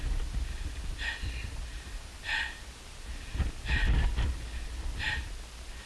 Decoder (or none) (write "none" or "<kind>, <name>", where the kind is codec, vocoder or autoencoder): none